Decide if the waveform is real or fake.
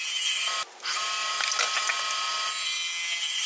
real